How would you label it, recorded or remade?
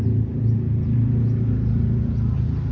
remade